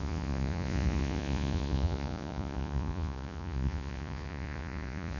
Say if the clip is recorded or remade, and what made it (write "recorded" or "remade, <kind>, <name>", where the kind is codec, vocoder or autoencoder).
remade, vocoder, Vocos